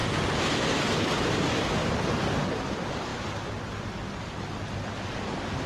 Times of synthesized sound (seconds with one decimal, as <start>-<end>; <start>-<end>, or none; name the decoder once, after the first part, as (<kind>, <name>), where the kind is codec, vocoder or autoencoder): none